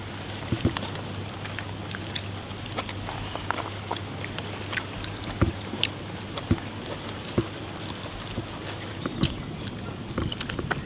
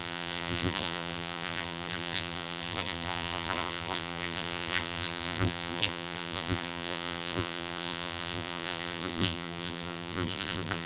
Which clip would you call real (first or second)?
first